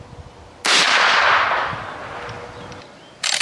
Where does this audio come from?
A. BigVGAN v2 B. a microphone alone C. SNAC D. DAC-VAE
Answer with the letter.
B